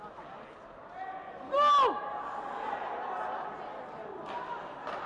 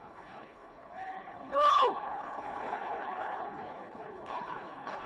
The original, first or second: first